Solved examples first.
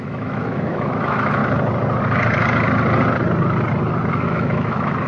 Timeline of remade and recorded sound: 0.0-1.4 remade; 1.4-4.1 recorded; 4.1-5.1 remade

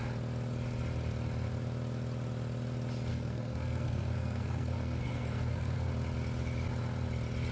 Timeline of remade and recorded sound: 0.0-3.1 recorded; 3.1-5.9 remade; 5.9-7.5 recorded

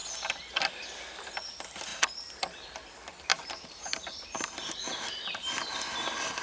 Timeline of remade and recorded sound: 0.0-3.3 recorded; 3.3-4.9 remade; 4.9-6.4 recorded

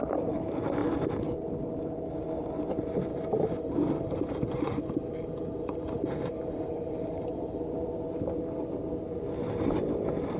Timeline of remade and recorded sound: 0.0-3.1 recorded; 3.1-7.6 remade; 7.6-10.4 recorded

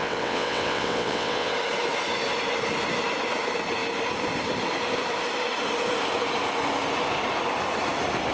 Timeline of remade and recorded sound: 0.0-1.5 remade; 1.5-8.3 recorded

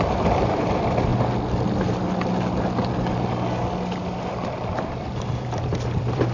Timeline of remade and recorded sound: 0.0-1.1 remade; 1.1-4.9 recorded; 4.9-6.3 remade